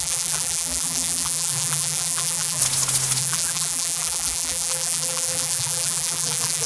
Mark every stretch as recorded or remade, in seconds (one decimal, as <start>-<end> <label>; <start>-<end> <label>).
0.0-2.6 remade; 2.6-3.2 recorded; 3.2-6.7 remade